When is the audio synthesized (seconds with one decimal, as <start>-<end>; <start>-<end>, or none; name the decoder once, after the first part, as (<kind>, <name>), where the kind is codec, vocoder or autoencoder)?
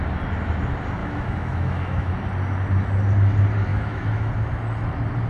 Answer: 1.0-2.1 (autoencoder, DAC-VAE); 3.7-4.3